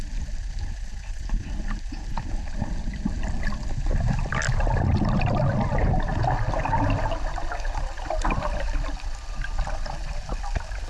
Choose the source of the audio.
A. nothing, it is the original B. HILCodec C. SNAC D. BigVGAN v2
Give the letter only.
A